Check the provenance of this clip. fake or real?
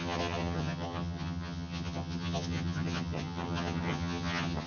fake